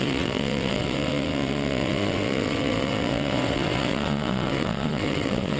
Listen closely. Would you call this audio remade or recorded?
remade